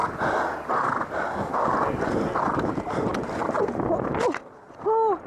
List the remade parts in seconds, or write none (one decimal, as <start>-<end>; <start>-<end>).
none